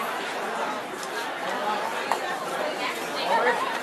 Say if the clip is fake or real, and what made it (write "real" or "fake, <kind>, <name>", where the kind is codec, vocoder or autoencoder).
real